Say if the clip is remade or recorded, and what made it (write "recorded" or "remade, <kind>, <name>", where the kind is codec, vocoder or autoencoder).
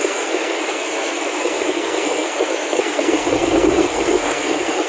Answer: remade, codec, SNAC